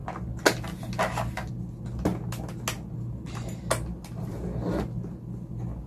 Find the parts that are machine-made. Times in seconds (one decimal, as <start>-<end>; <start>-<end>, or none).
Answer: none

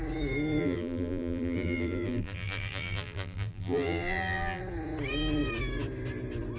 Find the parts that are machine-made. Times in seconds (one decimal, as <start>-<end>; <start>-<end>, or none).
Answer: 0.6-4.6

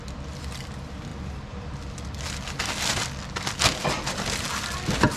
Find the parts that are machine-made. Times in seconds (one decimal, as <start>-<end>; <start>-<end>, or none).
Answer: none

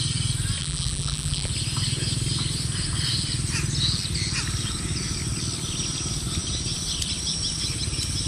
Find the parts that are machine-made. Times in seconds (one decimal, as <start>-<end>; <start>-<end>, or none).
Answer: 0.6-1.5

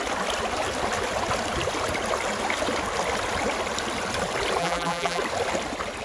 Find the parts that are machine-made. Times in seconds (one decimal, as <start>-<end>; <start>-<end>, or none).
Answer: 4.6-5.2

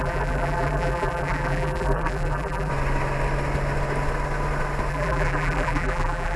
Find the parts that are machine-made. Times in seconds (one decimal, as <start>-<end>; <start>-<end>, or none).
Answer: 0.0-2.7; 4.9-6.4

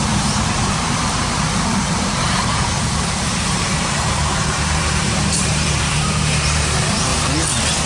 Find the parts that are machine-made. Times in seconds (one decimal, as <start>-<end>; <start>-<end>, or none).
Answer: 0.0-7.1